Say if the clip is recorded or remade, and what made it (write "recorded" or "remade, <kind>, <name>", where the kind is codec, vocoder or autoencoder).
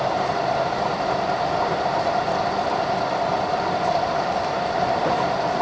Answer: remade, vocoder, BigVGAN v2